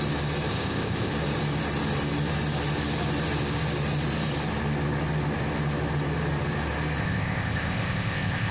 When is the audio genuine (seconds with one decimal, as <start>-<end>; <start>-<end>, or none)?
0.0-0.5; 1.1-7.0